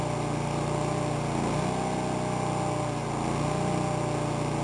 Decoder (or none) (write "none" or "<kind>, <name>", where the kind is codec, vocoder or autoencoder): none